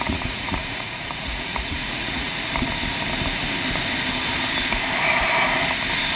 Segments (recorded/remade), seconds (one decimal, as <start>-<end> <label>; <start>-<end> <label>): 0.0-2.5 remade; 2.5-6.2 recorded